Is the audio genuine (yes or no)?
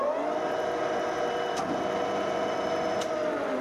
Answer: yes